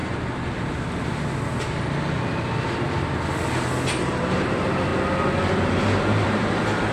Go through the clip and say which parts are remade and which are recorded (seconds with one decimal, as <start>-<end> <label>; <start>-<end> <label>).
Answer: 0.0-4.1 recorded; 4.1-4.9 remade; 4.9-5.5 recorded; 5.5-6.9 remade